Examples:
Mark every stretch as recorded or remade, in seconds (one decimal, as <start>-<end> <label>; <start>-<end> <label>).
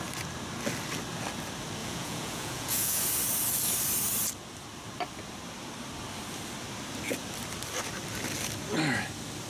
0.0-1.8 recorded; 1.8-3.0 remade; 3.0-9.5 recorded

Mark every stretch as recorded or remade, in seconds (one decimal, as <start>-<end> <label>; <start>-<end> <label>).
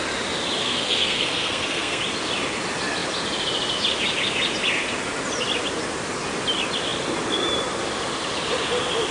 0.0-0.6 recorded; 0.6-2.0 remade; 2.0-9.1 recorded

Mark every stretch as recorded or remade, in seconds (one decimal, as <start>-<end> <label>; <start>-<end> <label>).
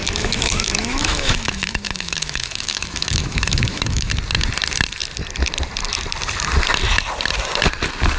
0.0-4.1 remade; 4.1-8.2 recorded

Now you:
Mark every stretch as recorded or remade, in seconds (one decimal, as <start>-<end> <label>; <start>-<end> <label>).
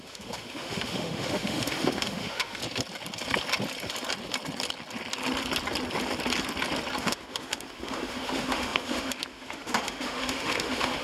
0.0-2.6 remade; 2.6-7.0 recorded; 7.0-11.0 remade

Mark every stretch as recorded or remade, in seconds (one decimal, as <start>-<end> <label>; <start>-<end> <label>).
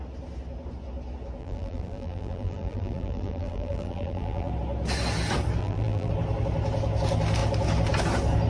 0.0-1.4 recorded; 1.4-4.5 remade; 4.5-5.6 recorded; 5.6-6.1 remade; 6.1-8.5 recorded